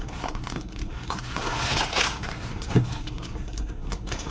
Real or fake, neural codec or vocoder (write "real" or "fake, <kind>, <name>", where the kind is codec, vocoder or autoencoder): fake, codec, SNAC